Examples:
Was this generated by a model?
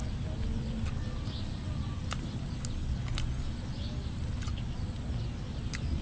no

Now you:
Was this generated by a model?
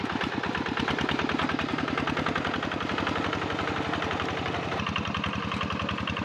no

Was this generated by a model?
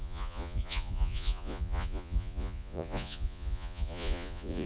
yes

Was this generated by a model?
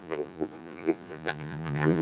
yes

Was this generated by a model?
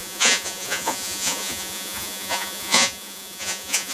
yes